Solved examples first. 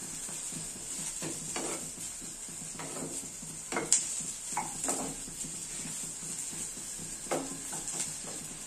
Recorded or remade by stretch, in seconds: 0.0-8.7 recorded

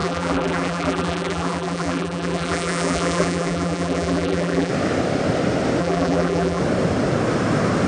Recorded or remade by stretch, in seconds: 0.0-4.7 remade; 4.7-5.8 recorded; 5.8-6.6 remade; 6.6-7.9 recorded

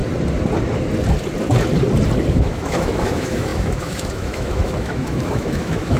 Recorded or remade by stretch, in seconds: 0.0-2.3 recorded; 2.3-6.0 remade